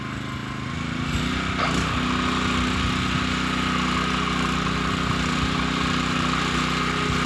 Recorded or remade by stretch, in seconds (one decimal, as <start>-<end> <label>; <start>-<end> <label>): 0.0-7.3 recorded